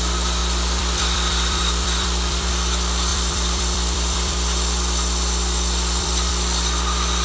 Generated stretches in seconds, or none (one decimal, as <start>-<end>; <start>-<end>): 0.4-2.5; 3.1-6.3